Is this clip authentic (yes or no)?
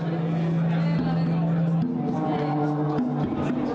yes